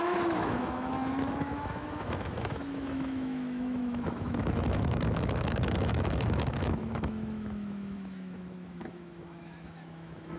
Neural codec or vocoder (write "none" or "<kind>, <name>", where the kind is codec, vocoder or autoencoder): autoencoder, DAC-VAE